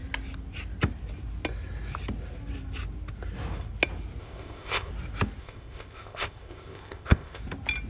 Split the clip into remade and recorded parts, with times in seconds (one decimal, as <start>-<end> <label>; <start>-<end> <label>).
0.0-4.2 recorded; 4.2-4.9 remade; 4.9-5.4 recorded; 5.4-7.4 remade; 7.4-7.9 recorded